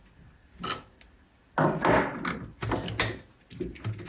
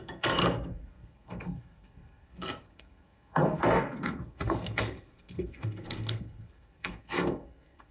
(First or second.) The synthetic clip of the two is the second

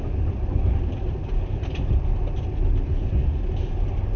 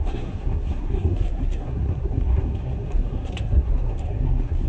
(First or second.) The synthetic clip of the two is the second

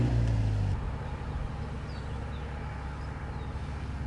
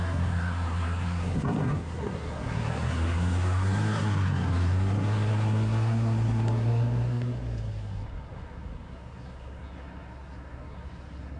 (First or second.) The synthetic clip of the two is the second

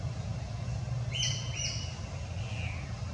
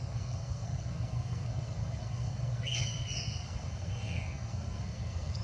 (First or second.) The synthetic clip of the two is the second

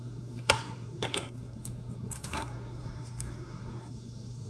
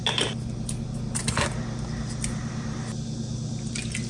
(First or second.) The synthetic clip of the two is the first